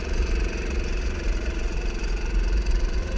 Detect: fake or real fake